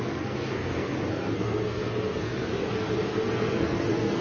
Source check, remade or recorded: remade